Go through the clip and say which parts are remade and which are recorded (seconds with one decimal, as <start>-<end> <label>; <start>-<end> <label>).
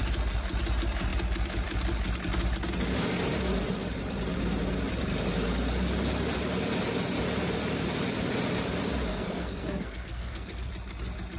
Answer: 0.0-9.1 recorded; 9.1-10.7 remade; 10.7-11.4 recorded